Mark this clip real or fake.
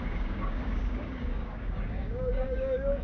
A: fake